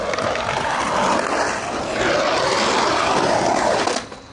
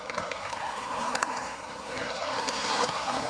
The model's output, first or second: second